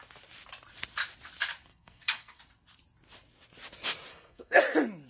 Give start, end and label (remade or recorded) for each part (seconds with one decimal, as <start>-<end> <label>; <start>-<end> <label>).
0.0-1.7 recorded; 1.7-2.4 remade; 2.4-4.1 recorded; 4.1-4.6 remade; 4.6-5.1 recorded